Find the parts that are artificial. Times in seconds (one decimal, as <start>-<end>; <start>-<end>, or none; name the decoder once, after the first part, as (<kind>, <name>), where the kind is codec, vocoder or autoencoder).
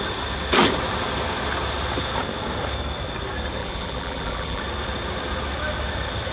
3.6-4.6 (vocoder, BigVGAN v2)